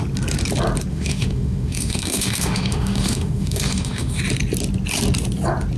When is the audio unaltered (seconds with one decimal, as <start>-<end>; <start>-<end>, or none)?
0.0-0.9; 4.2-5.8